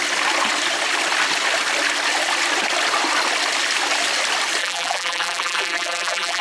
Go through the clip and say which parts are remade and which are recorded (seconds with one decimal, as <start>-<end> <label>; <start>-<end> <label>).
0.0-4.6 recorded; 4.6-6.4 remade